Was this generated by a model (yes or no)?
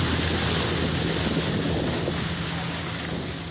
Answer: no